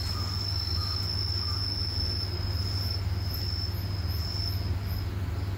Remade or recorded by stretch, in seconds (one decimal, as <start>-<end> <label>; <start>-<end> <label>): 0.0-5.6 recorded